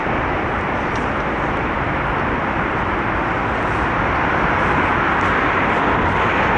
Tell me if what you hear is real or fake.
real